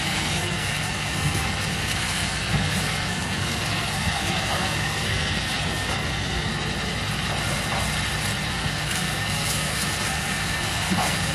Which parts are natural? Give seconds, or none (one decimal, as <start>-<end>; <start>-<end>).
6.5-8.5